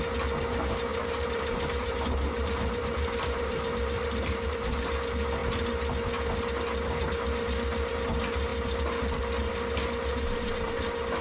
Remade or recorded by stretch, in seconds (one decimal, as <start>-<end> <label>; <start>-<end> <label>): 0.0-0.9 recorded; 0.9-4.9 remade; 4.9-10.1 recorded; 10.1-10.7 remade; 10.7-11.2 recorded